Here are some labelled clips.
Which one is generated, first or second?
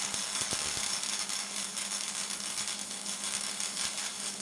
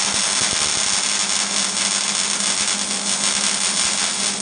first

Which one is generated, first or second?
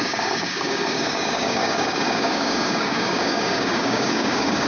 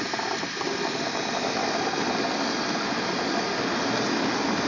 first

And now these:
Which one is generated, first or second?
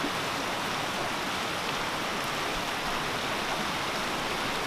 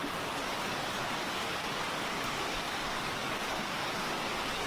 second